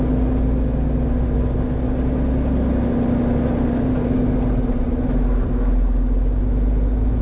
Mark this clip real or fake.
real